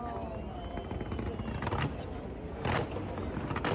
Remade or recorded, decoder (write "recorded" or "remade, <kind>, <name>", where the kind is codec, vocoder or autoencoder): recorded